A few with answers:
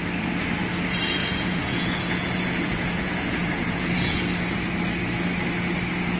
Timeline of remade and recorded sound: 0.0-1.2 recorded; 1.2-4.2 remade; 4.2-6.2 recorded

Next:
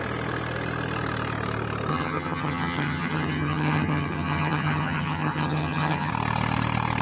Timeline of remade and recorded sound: 0.0-1.9 recorded; 1.9-6.1 remade; 6.1-7.0 recorded